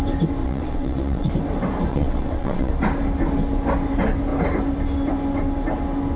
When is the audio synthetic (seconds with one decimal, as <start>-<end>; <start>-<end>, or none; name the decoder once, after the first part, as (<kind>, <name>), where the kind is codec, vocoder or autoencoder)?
0.4-1.3 (vocoder, WaveNeXt); 1.9-2.7